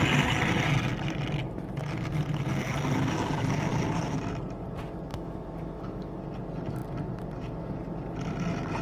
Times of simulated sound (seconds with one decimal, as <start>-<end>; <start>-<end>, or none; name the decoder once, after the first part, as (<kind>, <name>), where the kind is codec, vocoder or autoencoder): 5.1-6.2 (autoencoder, DAC-VAE)